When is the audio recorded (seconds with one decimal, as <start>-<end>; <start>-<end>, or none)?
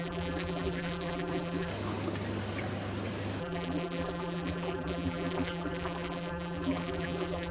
1.7-3.4